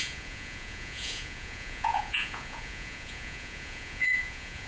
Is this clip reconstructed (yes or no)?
yes